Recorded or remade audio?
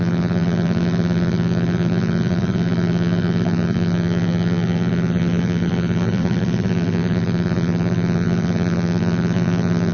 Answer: remade